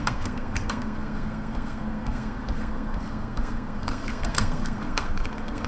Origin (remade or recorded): remade